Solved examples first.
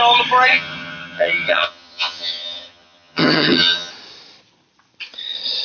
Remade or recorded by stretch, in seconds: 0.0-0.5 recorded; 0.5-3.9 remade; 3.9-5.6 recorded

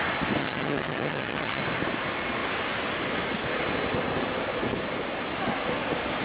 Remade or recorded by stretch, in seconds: 0.0-0.4 recorded; 0.4-1.6 remade; 1.6-6.2 recorded